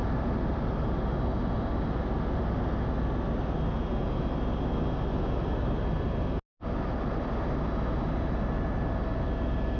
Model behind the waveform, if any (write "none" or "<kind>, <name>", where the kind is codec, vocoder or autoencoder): none